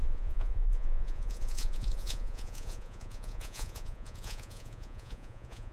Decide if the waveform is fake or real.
fake